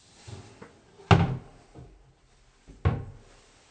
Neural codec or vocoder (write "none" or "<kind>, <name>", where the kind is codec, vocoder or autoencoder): none